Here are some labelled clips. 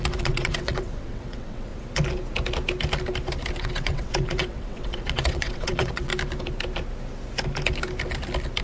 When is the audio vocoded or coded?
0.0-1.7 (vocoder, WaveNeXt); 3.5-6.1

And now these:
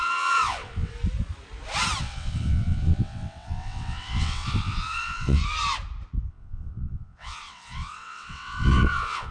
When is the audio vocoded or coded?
0.0-0.9 (vocoder, WaveNeXt); 2.0-5.4; 6.3-9.3

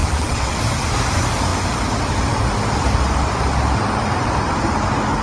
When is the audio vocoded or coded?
0.0-0.6 (vocoder, WaveNeXt)

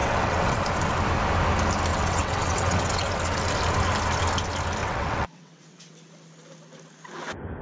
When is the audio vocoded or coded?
0.0-0.6 (vocoder, WaveNeXt); 1.9-3.1; 4.8-5.9